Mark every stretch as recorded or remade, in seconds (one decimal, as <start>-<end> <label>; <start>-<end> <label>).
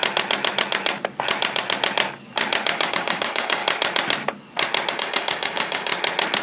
0.0-2.9 recorded; 2.9-3.6 remade; 3.6-4.9 recorded; 4.9-5.9 remade; 5.9-6.4 recorded